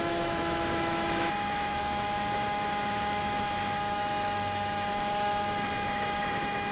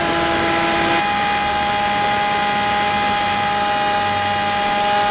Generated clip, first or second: first